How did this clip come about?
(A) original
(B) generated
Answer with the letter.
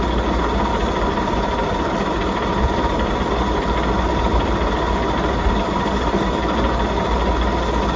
A